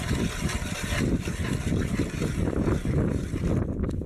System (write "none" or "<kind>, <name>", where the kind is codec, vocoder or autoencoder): none